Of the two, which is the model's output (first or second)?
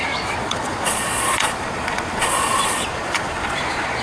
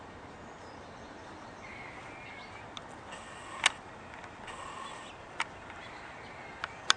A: first